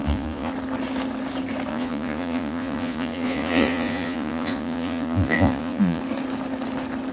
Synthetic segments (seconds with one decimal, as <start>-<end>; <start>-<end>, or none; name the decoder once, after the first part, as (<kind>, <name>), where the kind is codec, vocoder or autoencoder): 0.0-0.5 (vocoder, Vocos); 1.7-6.0